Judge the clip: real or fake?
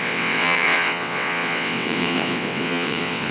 fake